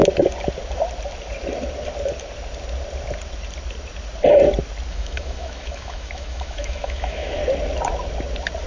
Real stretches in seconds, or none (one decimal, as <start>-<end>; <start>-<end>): 0.0-4.9; 7.4-8.7